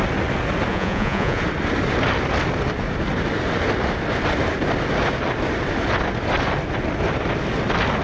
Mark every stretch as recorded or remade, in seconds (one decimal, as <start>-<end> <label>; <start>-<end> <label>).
0.0-0.7 recorded; 0.7-1.4 remade; 1.4-8.0 recorded